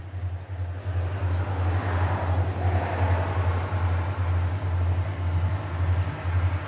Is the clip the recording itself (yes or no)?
yes